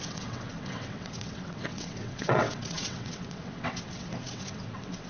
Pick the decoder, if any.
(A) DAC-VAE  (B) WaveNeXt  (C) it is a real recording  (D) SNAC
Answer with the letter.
B